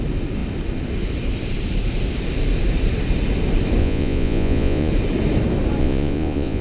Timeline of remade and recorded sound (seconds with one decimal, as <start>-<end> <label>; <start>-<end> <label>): 0.0-3.8 recorded; 3.8-4.9 remade; 4.9-5.8 recorded; 5.8-6.6 remade